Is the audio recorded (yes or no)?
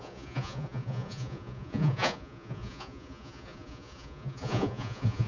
no